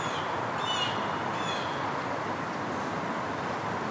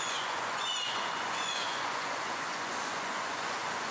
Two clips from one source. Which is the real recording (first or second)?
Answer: first